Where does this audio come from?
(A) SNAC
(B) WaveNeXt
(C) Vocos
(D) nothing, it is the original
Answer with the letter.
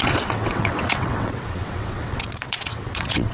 B